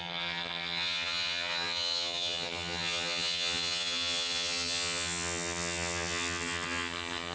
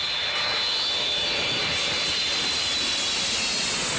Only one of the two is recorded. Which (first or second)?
second